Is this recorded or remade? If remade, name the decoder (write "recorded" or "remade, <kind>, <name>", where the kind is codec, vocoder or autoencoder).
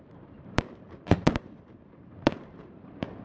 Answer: remade, vocoder, BigVGAN v2